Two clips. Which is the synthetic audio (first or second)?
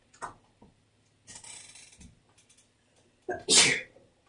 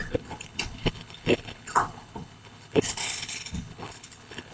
second